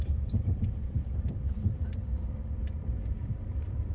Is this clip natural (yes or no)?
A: no